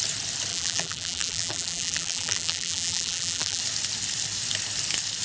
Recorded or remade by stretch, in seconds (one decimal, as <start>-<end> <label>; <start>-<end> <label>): 0.0-0.5 recorded; 0.5-3.6 remade; 3.6-5.2 recorded